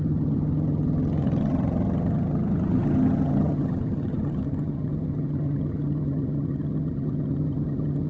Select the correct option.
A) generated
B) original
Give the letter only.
A